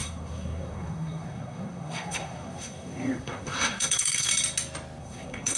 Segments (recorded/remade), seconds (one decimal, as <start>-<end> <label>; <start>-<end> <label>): 0.0-4.3 remade; 4.3-5.0 recorded; 5.0-5.6 remade